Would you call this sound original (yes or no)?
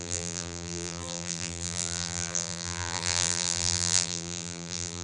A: no